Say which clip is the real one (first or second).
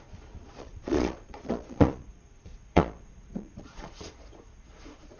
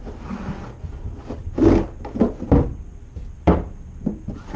second